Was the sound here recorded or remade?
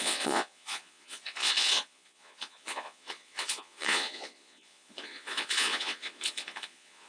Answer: remade